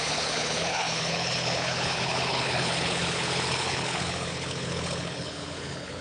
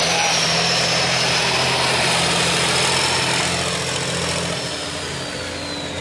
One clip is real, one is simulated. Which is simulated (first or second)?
first